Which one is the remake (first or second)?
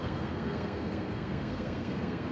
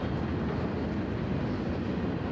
first